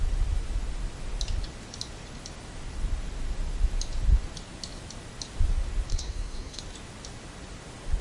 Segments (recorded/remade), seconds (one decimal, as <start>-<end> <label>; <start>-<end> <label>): 0.0-5.9 recorded; 5.9-6.6 remade; 6.6-8.0 recorded